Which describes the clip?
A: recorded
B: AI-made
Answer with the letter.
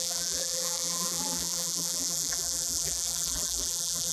B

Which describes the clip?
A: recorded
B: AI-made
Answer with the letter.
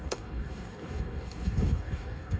B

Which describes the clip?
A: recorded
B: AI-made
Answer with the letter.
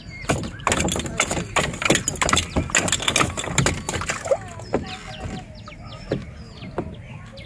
A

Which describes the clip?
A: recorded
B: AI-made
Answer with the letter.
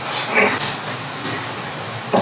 A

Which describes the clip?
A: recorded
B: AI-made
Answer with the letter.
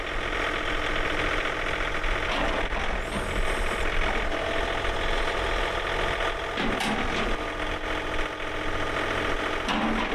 A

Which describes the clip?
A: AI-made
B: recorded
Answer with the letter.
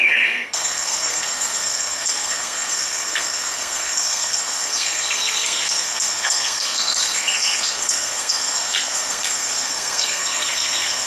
A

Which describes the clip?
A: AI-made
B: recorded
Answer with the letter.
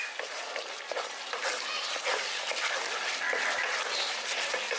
B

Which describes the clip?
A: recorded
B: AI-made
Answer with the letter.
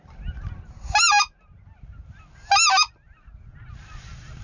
A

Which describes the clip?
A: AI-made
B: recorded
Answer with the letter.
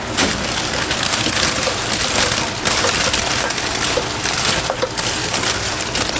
B